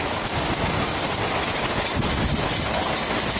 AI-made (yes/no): no